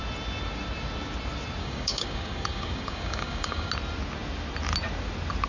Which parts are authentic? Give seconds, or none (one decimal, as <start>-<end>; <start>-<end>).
0.0-1.6; 3.7-5.5